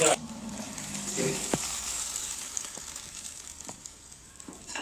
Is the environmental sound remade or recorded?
remade